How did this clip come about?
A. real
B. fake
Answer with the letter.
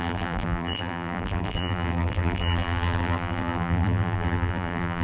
B